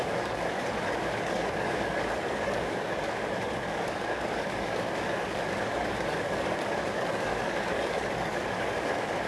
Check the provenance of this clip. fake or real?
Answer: fake